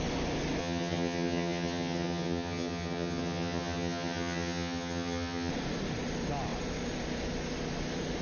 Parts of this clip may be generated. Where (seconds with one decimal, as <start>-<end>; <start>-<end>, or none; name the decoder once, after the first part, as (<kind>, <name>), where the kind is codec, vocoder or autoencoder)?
0.6-5.5 (vocoder, HiFi-GAN)

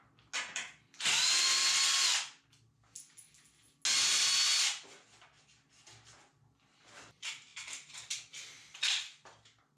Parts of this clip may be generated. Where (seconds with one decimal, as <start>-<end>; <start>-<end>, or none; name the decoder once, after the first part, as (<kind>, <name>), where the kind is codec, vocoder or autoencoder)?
none

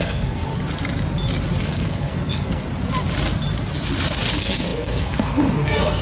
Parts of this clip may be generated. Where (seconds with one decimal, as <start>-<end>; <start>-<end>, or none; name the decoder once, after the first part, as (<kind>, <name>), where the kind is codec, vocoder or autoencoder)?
0.0-0.5 (codec, SNAC); 1.6-2.6; 4.3-6.0

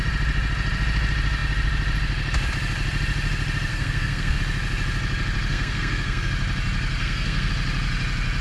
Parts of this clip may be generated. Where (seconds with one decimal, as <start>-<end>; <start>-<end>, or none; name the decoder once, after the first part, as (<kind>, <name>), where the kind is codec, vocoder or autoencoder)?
3.7-4.4 (codec, SNAC); 5.5-6.3; 7.0-7.5

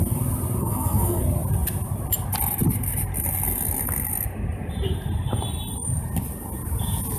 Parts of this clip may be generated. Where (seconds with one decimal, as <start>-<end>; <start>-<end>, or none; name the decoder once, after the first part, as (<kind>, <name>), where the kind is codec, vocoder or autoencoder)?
0.6-1.2 (codec, SNAC)

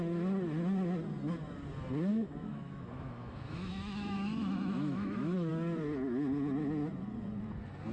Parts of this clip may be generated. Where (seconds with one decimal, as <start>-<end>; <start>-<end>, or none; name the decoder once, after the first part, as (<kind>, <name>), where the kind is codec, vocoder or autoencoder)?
2.1-5.5 (autoencoder, DAC-VAE)